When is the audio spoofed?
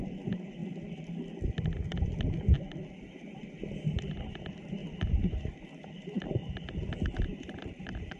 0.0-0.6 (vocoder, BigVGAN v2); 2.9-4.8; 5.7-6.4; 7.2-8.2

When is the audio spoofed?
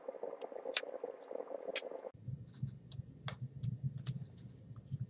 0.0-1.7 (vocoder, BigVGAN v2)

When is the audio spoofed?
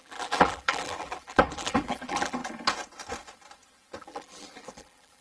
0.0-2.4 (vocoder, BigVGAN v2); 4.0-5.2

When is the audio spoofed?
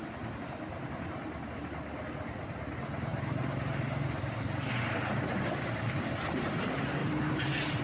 3.1-6.6 (vocoder, BigVGAN v2); 7.0-7.8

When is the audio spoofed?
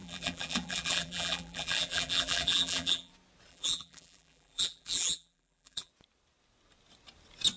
0.0-3.1 (vocoder, BigVGAN v2); 3.5-5.9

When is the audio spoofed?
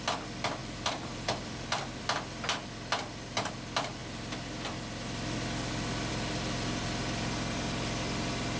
0.6-2.0 (vocoder, BigVGAN v2)